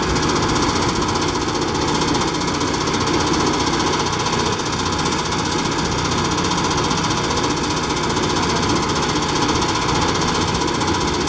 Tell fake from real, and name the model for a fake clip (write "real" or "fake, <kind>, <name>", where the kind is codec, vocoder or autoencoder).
real